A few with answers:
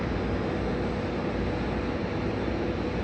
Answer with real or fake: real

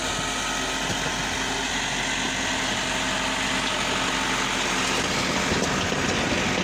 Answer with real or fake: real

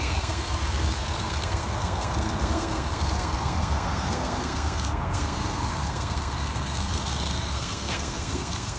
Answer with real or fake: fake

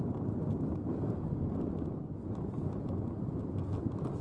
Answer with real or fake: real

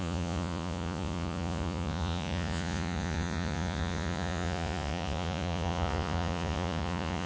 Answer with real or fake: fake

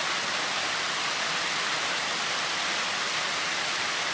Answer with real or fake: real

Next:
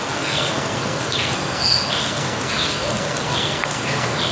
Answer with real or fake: fake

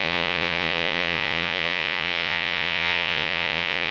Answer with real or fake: fake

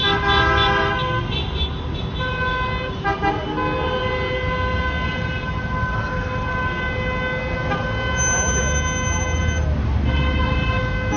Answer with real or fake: real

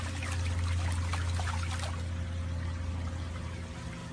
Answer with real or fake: real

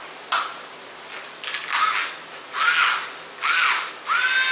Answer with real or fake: real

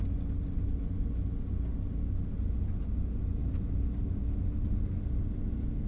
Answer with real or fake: real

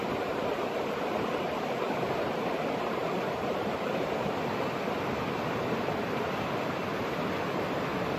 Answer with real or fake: real